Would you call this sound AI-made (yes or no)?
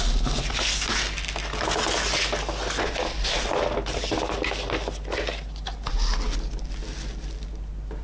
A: no